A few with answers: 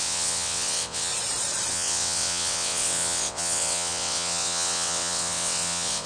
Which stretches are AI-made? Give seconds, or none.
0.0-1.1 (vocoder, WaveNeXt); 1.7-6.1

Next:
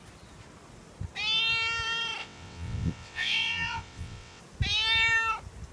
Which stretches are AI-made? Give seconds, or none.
2.2-4.4 (vocoder, WaveNeXt)

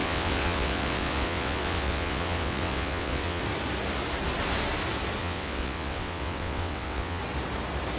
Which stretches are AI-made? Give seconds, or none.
0.0-3.4 (vocoder, WaveNeXt); 5.2-7.2

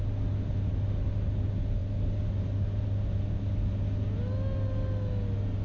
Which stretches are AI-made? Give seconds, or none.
none